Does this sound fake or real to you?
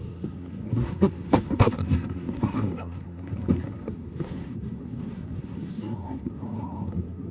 fake